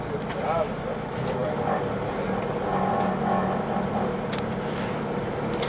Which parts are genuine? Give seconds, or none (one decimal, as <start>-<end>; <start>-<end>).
0.0-5.7